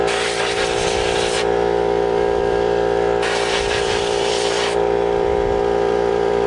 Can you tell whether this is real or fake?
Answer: fake